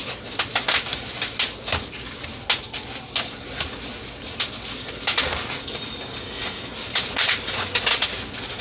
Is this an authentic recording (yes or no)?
yes